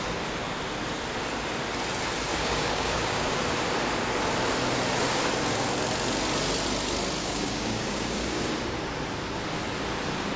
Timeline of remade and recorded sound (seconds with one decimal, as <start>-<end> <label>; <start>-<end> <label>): 0.0-2.3 recorded; 2.3-3.4 remade; 3.4-7.2 recorded; 7.2-8.5 remade; 8.5-10.4 recorded